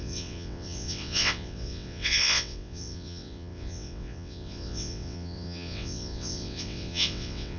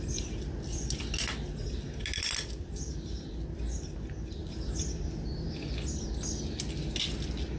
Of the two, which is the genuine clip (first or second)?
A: second